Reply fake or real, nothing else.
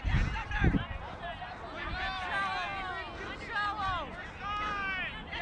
real